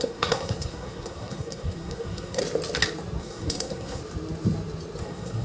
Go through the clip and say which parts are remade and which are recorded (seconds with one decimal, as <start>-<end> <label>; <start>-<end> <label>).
0.0-2.4 remade; 2.4-3.2 recorded; 3.2-4.0 remade; 4.0-5.0 recorded; 5.0-5.4 remade